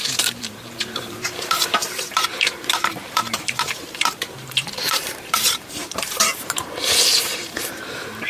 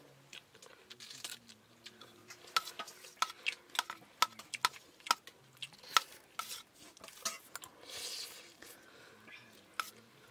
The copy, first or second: first